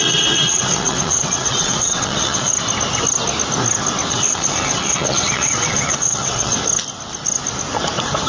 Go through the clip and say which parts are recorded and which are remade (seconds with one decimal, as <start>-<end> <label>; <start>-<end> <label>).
0.0-2.5 remade; 2.5-4.1 recorded; 4.1-6.6 remade; 6.6-8.3 recorded